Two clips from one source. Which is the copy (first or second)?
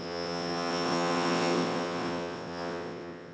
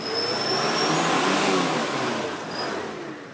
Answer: first